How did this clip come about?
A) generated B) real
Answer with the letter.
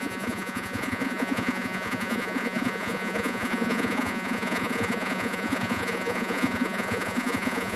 A